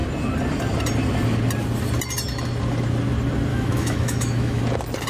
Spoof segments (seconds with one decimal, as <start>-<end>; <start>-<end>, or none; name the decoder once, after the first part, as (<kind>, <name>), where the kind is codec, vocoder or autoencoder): 3.5-4.6 (autoencoder, DAC-VAE)